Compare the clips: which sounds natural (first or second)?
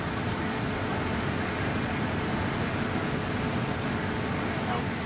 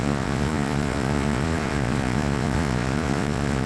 first